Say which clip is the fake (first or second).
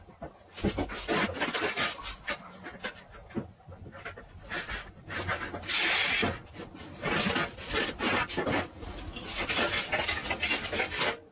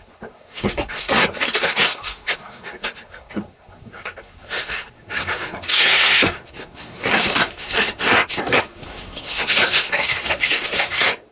second